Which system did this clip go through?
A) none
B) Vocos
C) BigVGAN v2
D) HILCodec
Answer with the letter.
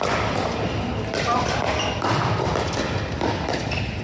A